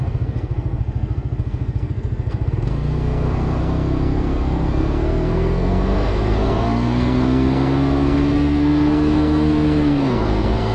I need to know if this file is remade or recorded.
remade